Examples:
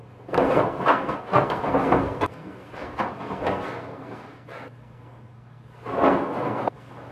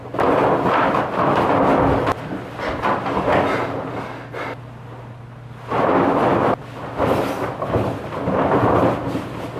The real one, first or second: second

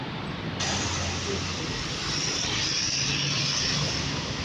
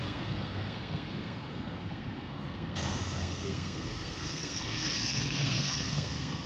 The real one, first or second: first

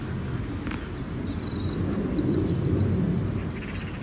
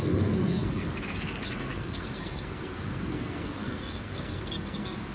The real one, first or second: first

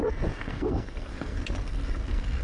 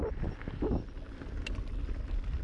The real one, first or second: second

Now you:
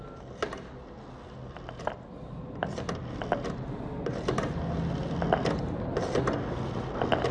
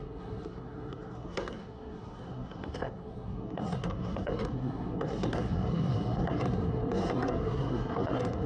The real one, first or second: first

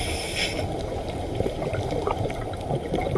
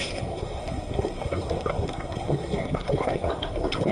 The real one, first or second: first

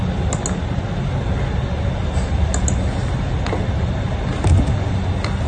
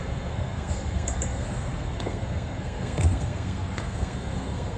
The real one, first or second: first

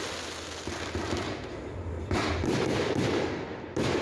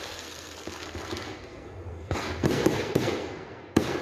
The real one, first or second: first